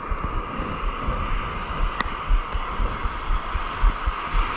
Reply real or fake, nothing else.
real